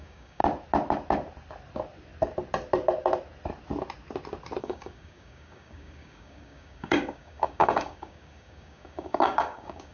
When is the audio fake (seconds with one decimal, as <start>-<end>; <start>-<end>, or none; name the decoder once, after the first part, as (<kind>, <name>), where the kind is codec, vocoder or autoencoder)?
0.0-0.4 (codec, DAC); 4.6-9.9